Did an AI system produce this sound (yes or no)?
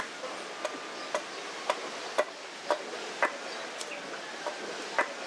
no